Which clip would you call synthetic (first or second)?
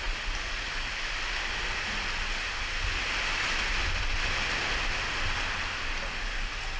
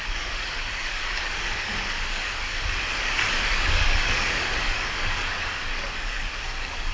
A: second